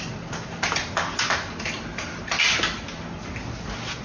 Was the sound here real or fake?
real